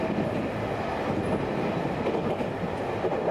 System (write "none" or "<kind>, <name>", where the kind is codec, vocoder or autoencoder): none